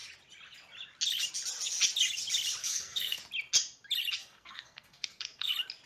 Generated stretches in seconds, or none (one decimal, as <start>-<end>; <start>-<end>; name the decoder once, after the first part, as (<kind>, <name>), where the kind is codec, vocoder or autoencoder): 2.6-3.2 (codec, SNAC); 4.2-5.5